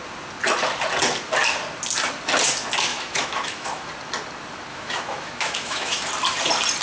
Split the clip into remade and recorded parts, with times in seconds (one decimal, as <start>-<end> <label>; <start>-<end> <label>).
0.0-2.9 recorded; 2.9-3.9 remade; 3.9-4.7 recorded; 4.7-6.1 remade; 6.1-6.8 recorded